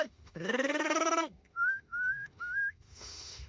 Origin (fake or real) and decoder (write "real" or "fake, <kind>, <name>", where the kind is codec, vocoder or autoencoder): fake, autoencoder, DAC-VAE